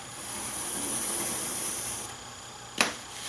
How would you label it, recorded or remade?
recorded